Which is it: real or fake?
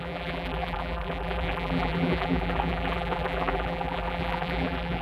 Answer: fake